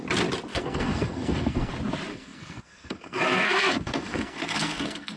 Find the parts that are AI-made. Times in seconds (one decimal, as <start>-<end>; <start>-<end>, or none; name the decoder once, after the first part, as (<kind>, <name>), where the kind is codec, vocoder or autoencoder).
0.5-1.7 (codec, SNAC); 2.1-5.2